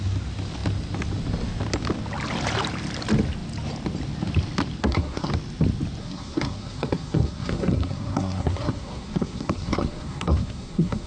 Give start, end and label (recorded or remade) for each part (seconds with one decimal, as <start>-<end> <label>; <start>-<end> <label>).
0.0-4.8 recorded; 4.8-5.3 remade; 5.3-6.0 recorded; 6.0-11.1 remade